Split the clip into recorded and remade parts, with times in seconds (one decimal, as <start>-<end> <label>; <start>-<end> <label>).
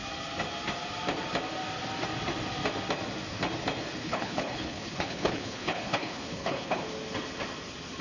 0.0-4.0 recorded; 4.0-6.8 remade; 6.8-8.0 recorded